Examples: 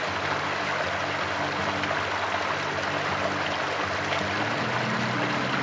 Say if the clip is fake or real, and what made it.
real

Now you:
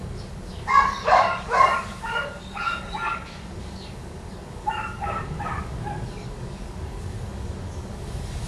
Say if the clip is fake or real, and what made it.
fake, codec, DAC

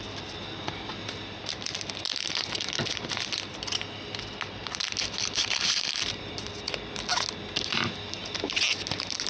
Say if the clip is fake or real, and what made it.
real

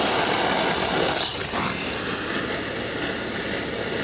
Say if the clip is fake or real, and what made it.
real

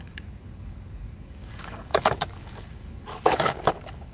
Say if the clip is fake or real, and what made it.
fake, codec, DAC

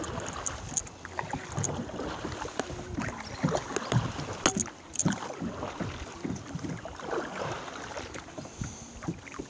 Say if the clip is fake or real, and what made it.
real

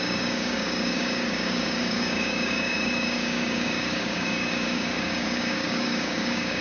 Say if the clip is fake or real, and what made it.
fake, codec, DAC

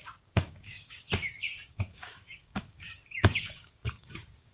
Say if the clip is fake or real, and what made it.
fake, codec, DAC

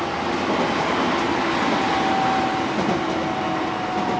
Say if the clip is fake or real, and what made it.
real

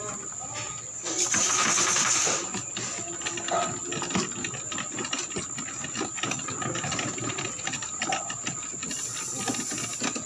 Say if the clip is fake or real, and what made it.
real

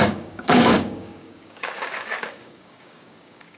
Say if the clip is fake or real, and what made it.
fake, codec, DAC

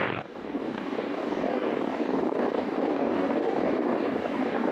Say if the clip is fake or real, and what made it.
fake, codec, DAC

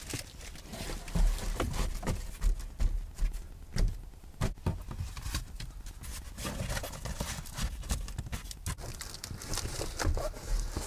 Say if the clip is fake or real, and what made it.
real